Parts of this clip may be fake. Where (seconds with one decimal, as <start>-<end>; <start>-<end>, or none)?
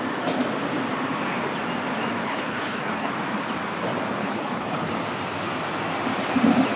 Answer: 2.2-3.1; 4.2-4.9